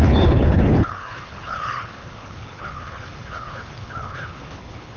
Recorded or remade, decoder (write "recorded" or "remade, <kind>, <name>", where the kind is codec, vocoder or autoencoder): remade, codec, HILCodec